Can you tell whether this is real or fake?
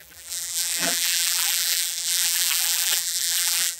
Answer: fake